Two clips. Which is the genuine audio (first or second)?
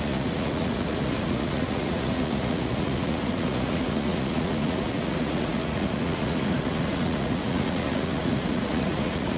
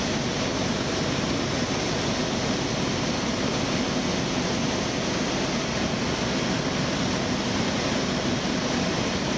second